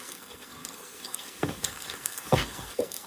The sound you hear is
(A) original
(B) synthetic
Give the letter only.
B